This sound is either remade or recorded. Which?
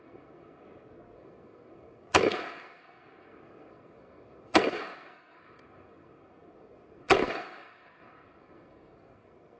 remade